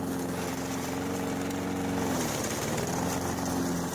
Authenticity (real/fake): real